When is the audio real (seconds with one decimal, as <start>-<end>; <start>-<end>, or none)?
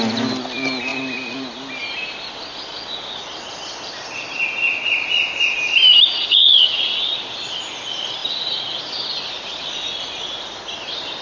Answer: 0.0-6.2; 7.2-11.2